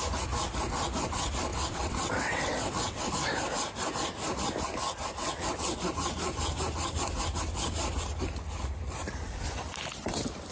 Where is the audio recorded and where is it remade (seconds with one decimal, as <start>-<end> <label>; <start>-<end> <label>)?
0.0-1.5 recorded; 1.5-3.1 remade; 3.1-5.2 recorded; 5.2-5.8 remade; 5.8-10.5 recorded